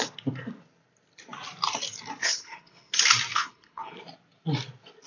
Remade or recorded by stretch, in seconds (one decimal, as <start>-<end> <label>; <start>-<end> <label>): 0.0-2.2 recorded; 2.2-2.9 remade; 2.9-3.3 recorded; 3.3-4.0 remade; 4.0-5.1 recorded